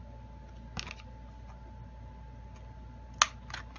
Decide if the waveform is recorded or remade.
recorded